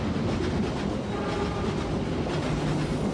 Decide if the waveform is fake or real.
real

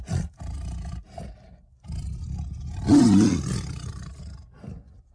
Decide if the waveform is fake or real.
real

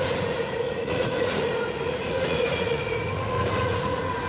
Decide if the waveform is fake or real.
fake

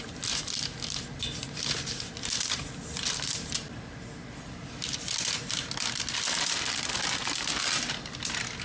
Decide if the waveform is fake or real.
real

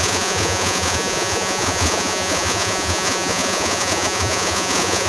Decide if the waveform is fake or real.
fake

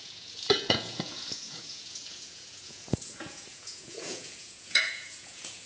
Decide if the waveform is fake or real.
fake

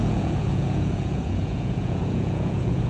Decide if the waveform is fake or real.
fake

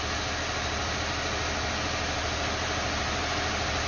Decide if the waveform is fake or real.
real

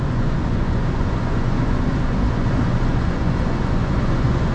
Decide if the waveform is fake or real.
fake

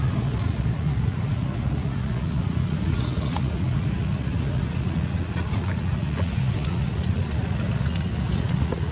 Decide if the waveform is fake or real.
fake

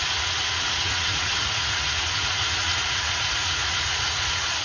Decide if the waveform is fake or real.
fake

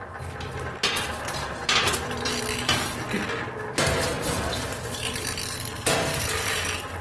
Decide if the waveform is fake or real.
real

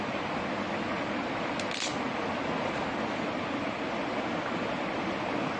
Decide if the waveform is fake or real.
real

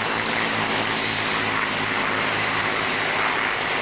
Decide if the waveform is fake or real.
real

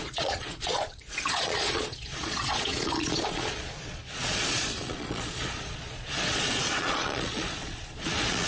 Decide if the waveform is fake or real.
fake